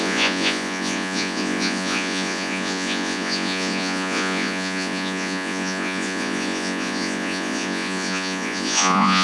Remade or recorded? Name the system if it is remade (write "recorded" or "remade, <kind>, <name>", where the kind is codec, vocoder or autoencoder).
remade, vocoder, Vocos